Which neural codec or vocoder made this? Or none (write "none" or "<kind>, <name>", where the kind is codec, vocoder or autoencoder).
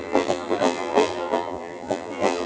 vocoder, BigVGAN v2